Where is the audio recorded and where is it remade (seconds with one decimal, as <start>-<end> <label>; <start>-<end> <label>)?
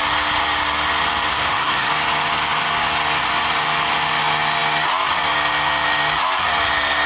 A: 0.0-1.3 recorded; 1.3-1.9 remade; 1.9-7.1 recorded